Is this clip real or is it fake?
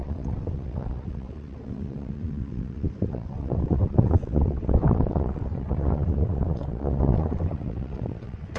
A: fake